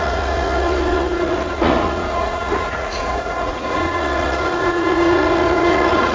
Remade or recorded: remade